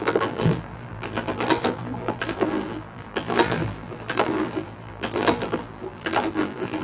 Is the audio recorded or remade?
remade